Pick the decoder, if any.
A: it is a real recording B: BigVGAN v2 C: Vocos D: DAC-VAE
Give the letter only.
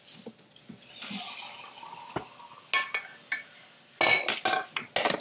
A